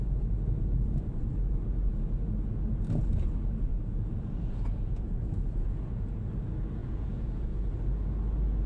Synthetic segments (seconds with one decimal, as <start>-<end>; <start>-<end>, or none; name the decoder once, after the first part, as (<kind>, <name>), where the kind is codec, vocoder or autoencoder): 3.7-6.3 (vocoder, Vocos); 6.8-7.7